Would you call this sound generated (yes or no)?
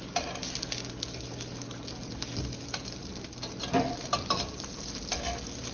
no